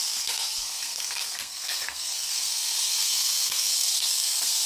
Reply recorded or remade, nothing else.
remade